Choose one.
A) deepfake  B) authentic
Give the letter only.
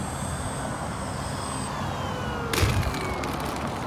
B